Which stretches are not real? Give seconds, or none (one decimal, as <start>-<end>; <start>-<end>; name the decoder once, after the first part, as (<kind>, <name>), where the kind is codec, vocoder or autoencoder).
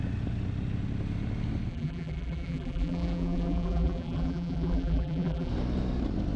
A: 1.7-5.5 (vocoder, BigVGAN v2)